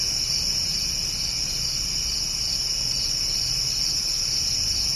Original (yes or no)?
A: yes